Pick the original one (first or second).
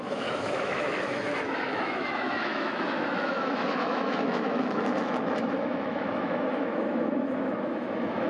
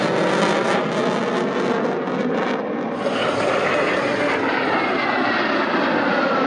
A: second